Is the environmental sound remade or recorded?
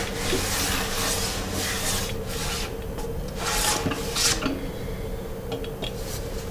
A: recorded